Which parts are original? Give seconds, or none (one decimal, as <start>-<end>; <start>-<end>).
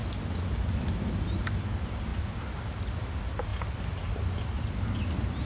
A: 0.0-5.4